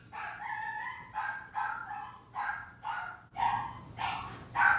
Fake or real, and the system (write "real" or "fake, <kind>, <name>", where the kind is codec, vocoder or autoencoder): real